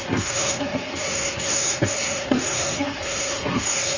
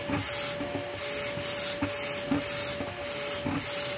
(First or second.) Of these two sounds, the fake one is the first